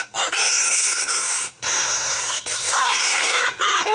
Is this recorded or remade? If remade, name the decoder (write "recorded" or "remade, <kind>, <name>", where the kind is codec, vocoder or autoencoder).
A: remade, codec, SNAC